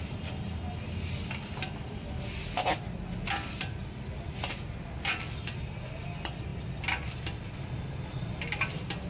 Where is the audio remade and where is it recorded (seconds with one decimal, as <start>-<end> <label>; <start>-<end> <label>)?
0.0-9.1 recorded